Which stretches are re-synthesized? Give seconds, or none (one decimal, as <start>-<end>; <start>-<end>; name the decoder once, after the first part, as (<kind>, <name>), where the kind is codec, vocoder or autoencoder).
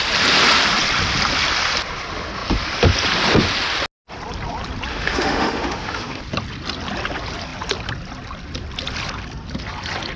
4.9-6.2 (autoencoder, DAC-VAE)